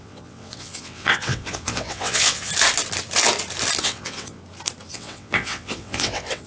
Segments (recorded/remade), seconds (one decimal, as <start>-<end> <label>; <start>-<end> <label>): 0.0-2.5 remade; 2.5-3.8 recorded; 3.8-4.4 remade; 4.4-4.9 recorded; 4.9-6.5 remade